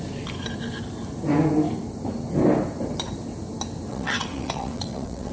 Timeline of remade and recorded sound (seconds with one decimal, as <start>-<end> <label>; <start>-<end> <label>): 0.0-3.9 recorded; 3.9-5.3 remade